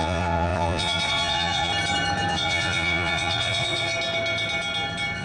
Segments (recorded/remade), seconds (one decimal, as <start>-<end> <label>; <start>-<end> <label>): 0.0-1.7 remade; 1.7-2.3 recorded; 2.3-3.9 remade; 3.9-5.2 recorded